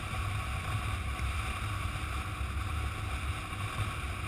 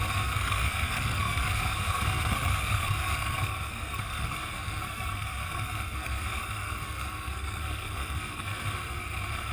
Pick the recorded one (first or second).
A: first